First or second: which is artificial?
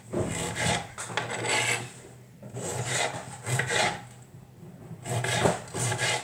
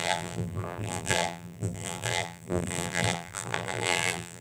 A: second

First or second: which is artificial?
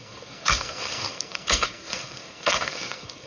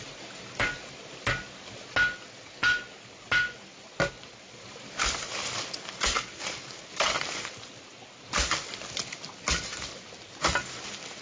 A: first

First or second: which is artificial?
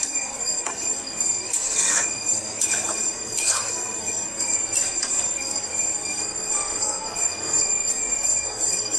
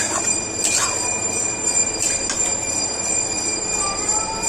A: first